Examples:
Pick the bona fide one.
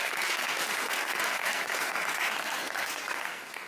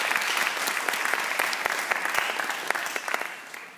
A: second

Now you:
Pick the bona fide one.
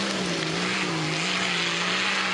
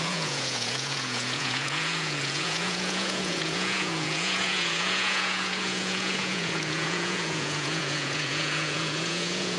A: first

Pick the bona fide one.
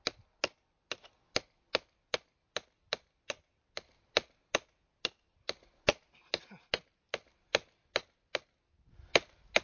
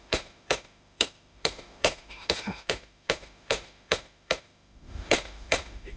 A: first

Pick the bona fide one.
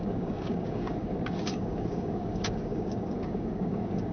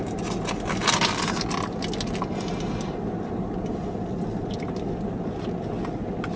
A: second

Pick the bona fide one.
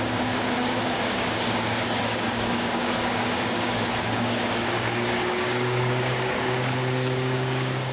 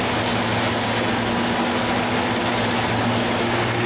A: second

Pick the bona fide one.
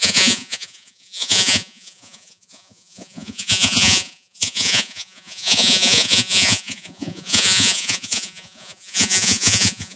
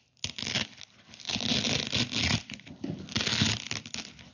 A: second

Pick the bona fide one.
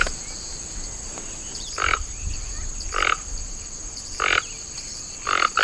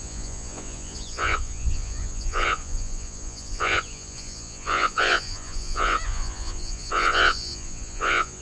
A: first